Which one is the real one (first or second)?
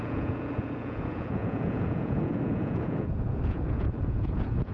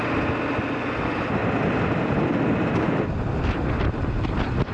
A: second